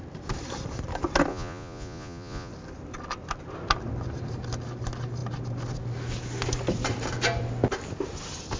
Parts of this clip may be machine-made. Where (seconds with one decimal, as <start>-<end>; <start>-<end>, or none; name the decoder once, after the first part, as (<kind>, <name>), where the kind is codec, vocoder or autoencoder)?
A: 1.3-2.5 (vocoder, Vocos)